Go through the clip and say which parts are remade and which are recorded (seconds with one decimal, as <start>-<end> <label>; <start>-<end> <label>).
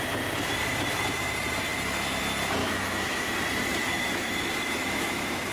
0.0-2.6 recorded; 2.6-3.3 remade; 3.3-3.8 recorded; 3.8-5.5 remade